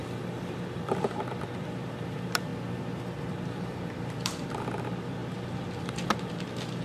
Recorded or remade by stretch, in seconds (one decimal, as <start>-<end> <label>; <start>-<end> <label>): 0.0-2.5 remade; 2.5-3.3 recorded; 3.3-5.2 remade; 5.2-5.8 recorded; 5.8-6.8 remade